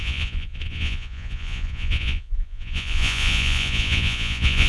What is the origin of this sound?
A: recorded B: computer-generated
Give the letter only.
B